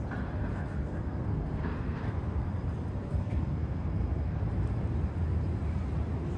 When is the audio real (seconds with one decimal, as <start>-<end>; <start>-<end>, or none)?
0.0-0.5; 2.5-3.1; 4.4-6.4